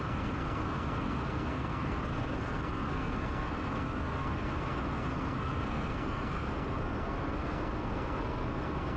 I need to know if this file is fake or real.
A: fake